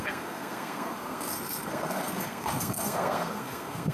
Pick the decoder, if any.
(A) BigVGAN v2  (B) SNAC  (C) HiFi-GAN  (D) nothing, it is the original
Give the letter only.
B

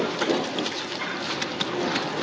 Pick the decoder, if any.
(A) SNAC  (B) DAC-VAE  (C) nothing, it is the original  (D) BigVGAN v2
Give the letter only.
C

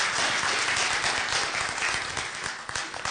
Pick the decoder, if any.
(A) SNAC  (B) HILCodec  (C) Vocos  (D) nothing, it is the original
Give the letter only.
D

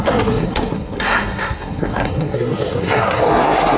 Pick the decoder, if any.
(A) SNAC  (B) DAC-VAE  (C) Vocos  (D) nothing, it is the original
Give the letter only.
A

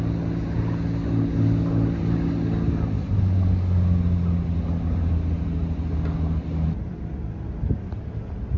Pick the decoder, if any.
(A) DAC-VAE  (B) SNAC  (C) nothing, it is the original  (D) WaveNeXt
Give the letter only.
C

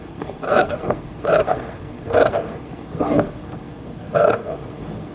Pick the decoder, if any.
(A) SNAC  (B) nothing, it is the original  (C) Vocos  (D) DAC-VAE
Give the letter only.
A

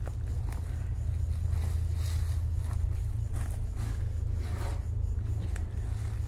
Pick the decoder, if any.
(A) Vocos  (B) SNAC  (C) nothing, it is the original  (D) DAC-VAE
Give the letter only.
C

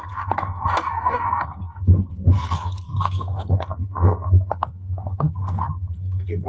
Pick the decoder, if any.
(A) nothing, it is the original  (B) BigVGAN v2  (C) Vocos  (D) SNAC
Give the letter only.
D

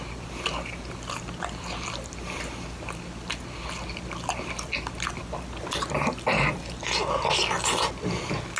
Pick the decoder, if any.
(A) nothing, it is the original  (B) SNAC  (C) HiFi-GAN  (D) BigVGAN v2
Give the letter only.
A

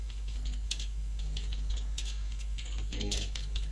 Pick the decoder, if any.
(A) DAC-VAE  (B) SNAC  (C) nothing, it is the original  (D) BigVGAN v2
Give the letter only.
B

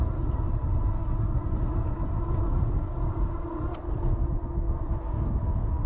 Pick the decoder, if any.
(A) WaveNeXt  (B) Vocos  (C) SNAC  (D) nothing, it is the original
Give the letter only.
D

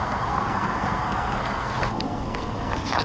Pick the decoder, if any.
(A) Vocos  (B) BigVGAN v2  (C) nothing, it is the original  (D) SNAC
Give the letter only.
D